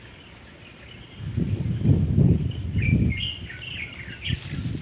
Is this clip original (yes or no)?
yes